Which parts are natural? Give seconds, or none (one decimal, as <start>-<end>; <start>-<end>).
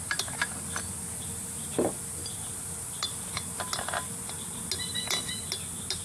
0.0-6.0